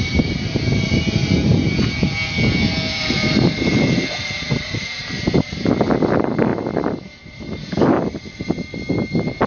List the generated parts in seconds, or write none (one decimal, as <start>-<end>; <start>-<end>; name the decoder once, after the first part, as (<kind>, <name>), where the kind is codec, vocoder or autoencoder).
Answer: 0.0-1.2 (vocoder, BigVGAN v2); 3.0-6.5; 8.0-9.5

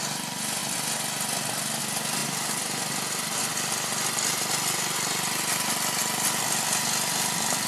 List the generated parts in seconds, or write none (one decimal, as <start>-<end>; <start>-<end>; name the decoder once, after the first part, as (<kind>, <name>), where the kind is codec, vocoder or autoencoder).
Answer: none

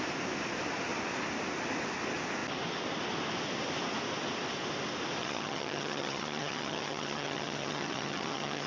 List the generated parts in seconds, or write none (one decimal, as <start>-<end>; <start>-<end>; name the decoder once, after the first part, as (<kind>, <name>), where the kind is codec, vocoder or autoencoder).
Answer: 5.2-8.7 (vocoder, HiFi-GAN)

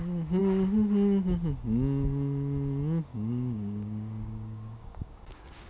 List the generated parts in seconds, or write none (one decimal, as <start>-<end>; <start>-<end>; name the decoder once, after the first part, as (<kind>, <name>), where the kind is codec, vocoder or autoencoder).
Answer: 3.1-5.7 (codec, DAC)

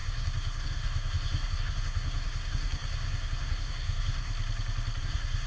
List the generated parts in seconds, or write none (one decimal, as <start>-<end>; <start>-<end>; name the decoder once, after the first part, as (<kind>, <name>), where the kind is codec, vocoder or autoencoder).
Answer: 0.0-4.3 (codec, SNAC); 5.0-5.5

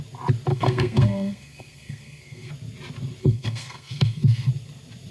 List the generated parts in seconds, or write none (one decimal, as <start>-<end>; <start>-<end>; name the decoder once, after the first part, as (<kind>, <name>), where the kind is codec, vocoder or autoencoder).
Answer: 0.5-2.5 (codec, SNAC); 3.2-4.5